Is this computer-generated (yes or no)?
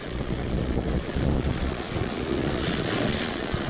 yes